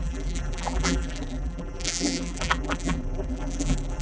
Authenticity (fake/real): fake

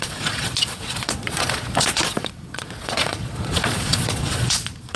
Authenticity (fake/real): fake